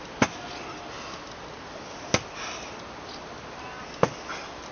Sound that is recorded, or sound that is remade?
recorded